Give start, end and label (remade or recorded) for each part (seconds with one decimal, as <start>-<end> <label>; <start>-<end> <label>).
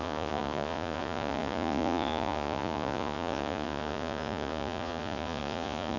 0.0-6.0 remade